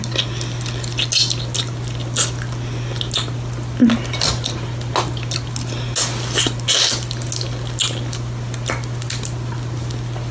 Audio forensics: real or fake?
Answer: real